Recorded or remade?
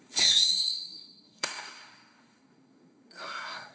remade